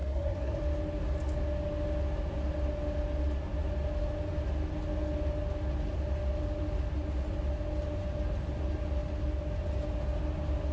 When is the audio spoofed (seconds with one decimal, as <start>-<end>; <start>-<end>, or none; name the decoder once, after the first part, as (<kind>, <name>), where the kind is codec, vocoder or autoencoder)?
0.0-0.6 (codec, SNAC)